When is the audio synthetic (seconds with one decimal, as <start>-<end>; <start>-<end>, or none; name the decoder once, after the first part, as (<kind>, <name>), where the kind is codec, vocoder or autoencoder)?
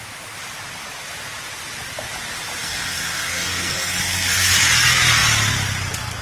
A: 2.6-4.5 (codec, SNAC)